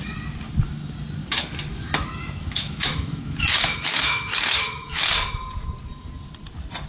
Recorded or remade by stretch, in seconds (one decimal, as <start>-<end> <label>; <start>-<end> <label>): 0.0-1.2 recorded; 1.2-5.0 remade; 5.0-6.9 recorded